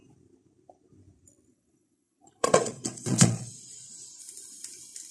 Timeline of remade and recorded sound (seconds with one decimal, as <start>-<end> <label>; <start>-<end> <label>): 0.0-1.5 recorded; 1.5-4.2 remade; 4.2-5.1 recorded